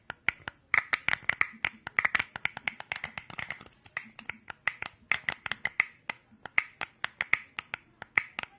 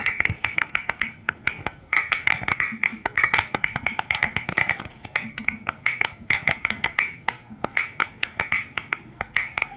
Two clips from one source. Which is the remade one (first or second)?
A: second